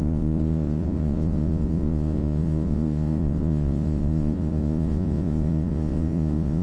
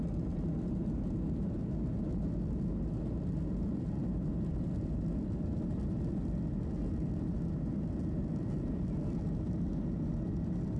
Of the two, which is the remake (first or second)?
first